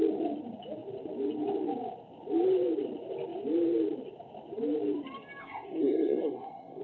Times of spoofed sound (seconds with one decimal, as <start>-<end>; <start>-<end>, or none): 5.4-6.8